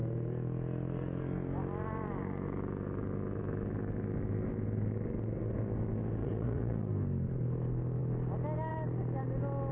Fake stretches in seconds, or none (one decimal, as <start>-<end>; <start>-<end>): 6.2-6.9